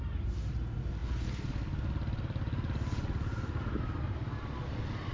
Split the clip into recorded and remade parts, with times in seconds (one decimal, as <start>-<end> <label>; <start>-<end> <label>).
0.0-5.1 recorded